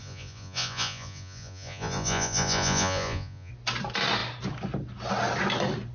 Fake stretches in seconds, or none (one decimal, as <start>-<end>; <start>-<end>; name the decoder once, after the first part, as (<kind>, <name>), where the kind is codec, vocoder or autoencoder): 0.0-3.5 (vocoder, Vocos)